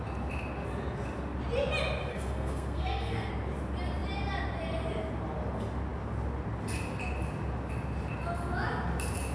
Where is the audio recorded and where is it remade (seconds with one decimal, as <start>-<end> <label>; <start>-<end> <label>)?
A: 0.0-2.1 recorded; 2.1-3.3 remade; 3.3-9.3 recorded